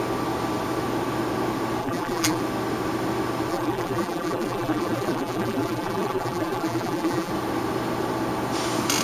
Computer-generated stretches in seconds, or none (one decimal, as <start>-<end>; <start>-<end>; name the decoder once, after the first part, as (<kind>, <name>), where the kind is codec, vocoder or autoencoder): 1.8-2.4 (vocoder, BigVGAN v2); 3.5-7.3